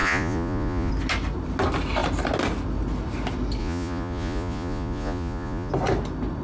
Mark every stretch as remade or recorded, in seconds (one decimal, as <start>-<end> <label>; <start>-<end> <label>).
0.0-0.9 remade; 0.9-3.6 recorded; 3.6-5.7 remade; 5.7-6.4 recorded